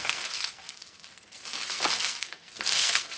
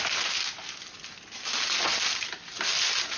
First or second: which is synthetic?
first